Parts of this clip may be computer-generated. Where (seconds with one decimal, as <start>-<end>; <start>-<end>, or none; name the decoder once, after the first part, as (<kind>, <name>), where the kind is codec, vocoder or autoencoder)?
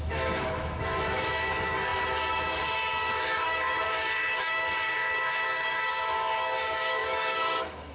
0.0-7.9 (autoencoder, DAC-VAE)